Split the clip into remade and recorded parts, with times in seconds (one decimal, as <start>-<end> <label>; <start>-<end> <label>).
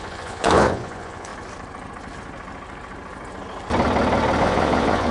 0.0-1.3 remade; 1.3-4.4 recorded; 4.4-5.1 remade